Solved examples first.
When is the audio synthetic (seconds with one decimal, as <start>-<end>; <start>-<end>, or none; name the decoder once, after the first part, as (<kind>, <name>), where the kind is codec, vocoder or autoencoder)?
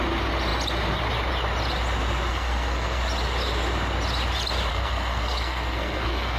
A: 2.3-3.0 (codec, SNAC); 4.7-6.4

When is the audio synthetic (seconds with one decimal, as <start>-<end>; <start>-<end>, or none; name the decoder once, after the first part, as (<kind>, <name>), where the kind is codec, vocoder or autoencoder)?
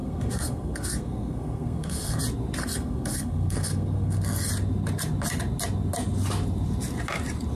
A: 0.0-2.2 (codec, SNAC); 2.6-4.5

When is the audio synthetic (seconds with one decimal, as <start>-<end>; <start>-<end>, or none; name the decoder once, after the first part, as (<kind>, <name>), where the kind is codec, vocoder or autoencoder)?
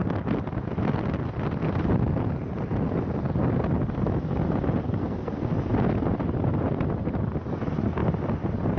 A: 5.0-5.5 (codec, SNAC)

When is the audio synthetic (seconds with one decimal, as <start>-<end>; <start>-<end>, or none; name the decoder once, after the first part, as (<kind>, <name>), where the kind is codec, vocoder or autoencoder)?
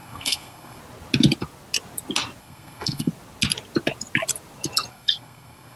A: 0.0-0.8 (codec, SNAC); 2.4-3.1; 4.9-5.8